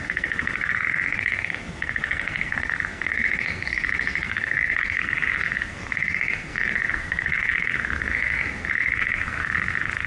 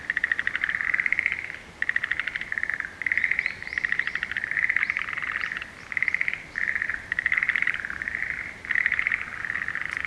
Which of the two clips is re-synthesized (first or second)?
first